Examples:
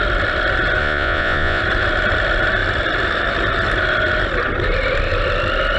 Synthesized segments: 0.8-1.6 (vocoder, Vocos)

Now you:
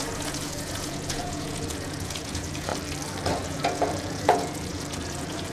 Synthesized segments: 0.0-2.7 (vocoder, Vocos); 3.3-5.5

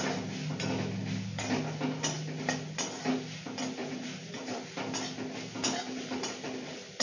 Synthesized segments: 3.8-4.6 (vocoder, BigVGAN v2)

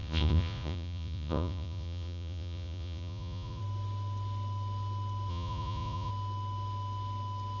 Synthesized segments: 0.0-3.6 (vocoder, Vocos); 5.3-6.1

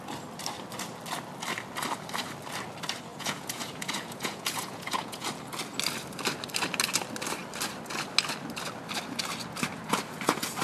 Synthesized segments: 3.1-5.3 (vocoder, Vocos)

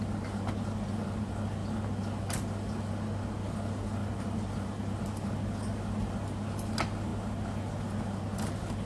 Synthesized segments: none

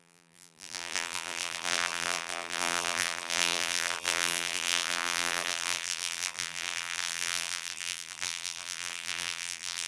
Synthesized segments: 0.0-9.9 (vocoder, BigVGAN v2)

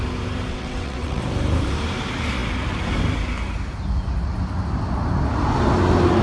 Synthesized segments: 0.5-1.2 (vocoder, WaveNeXt)